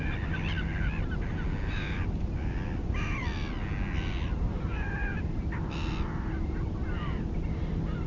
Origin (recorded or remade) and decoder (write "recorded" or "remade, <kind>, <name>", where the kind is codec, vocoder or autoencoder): recorded